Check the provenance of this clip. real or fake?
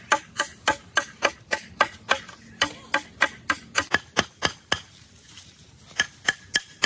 real